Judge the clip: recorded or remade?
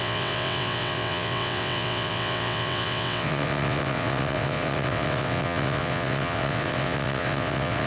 remade